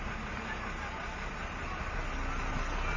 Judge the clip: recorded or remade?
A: recorded